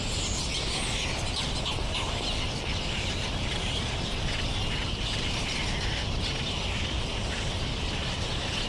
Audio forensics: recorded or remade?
recorded